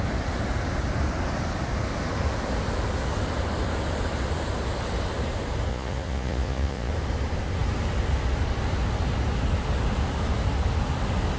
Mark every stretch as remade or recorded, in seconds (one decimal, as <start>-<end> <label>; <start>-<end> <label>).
0.0-5.7 recorded; 5.7-6.9 remade; 6.9-11.4 recorded